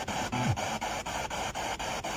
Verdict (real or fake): real